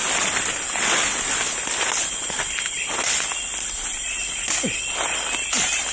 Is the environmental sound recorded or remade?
recorded